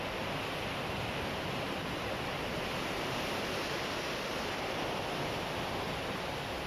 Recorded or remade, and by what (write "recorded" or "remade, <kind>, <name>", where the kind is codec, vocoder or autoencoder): recorded